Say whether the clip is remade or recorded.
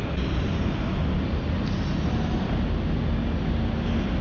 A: recorded